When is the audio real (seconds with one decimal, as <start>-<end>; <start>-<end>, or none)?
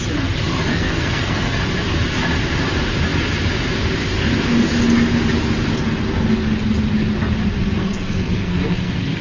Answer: 0.0-0.7; 1.6-7.8